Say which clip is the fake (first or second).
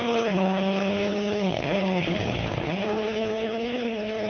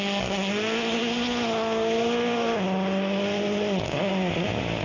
first